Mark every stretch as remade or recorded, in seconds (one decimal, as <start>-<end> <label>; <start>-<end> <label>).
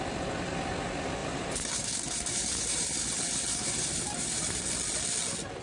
0.0-1.2 recorded; 1.2-4.6 remade; 4.6-5.6 recorded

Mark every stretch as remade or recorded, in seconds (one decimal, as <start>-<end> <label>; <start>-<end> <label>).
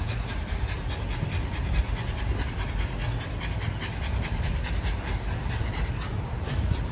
0.0-3.0 remade; 3.0-4.7 recorded; 4.7-6.9 remade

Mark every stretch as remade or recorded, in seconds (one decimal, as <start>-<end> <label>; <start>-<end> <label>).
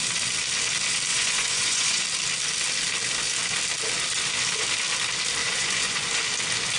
0.0-1.1 recorded; 1.1-2.0 remade; 2.0-5.4 recorded; 5.4-6.2 remade; 6.2-6.8 recorded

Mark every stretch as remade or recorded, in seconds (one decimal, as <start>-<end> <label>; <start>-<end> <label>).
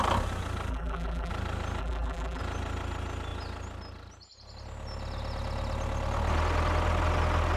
0.0-0.7 recorded; 0.7-1.3 remade; 1.3-1.8 recorded; 1.8-2.4 remade; 2.4-7.6 recorded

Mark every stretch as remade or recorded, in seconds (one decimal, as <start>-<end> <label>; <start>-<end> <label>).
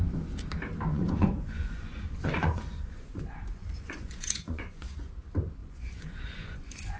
0.0-0.9 recorded; 0.9-5.1 remade; 5.1-5.6 recorded; 5.6-7.0 remade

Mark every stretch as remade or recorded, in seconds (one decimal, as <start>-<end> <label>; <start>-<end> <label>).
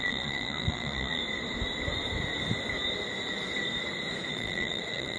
0.0-1.2 remade; 1.2-4.3 recorded; 4.3-5.2 remade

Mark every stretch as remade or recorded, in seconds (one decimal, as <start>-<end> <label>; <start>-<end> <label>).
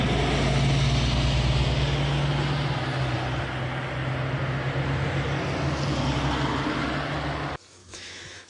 0.0-7.8 recorded; 7.8-8.5 remade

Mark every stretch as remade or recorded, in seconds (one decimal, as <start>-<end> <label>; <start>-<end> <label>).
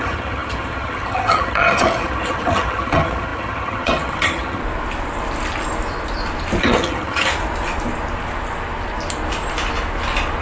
0.0-4.6 remade; 4.6-6.6 recorded; 6.6-7.3 remade; 7.3-10.4 recorded